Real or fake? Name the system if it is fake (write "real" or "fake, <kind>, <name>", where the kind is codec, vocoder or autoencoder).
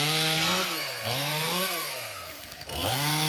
fake, codec, SNAC